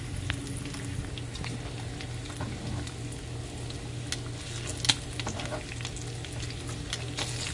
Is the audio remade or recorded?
recorded